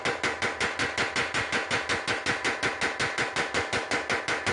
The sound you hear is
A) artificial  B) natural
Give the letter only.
B